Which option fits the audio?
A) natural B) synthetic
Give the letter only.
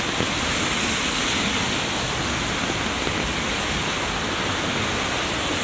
A